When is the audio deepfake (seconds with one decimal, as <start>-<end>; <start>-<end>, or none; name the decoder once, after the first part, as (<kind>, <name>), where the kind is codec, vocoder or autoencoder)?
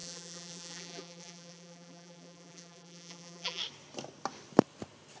0.0-3.6 (vocoder, BigVGAN v2)